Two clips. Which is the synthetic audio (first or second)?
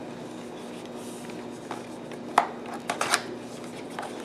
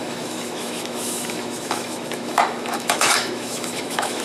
second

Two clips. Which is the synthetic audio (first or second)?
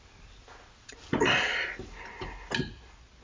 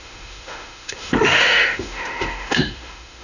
second